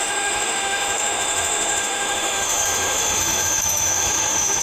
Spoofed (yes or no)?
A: yes